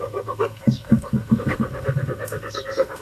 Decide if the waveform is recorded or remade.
remade